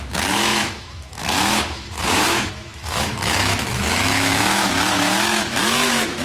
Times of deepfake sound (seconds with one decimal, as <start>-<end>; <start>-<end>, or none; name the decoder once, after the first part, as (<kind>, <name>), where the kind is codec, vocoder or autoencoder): 0.0-6.2 (autoencoder, DAC-VAE)